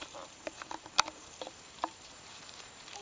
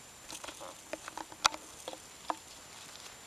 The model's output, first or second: first